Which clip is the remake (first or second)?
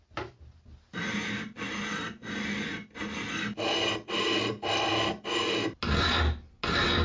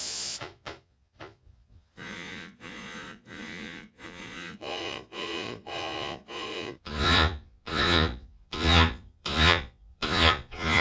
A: second